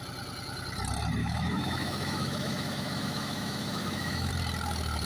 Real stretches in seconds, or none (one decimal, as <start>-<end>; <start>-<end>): 0.0-1.2; 4.3-5.1